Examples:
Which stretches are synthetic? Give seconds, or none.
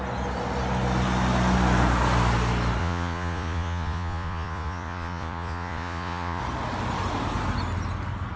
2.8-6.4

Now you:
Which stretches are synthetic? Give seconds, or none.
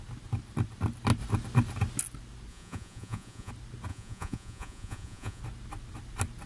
2.5-3.5; 3.9-5.4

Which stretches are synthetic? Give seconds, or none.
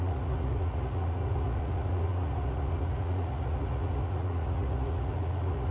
0.0-5.7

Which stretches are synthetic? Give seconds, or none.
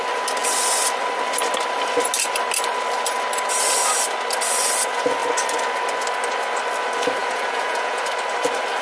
7.2-8.0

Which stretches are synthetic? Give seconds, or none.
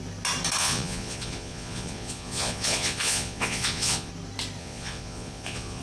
0.6-4.1; 4.6-5.8